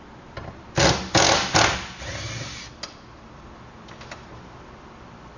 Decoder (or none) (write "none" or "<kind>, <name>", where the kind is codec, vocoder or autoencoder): none